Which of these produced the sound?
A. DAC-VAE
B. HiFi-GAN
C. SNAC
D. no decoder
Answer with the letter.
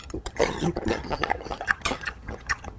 B